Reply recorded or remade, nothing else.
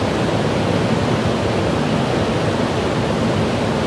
recorded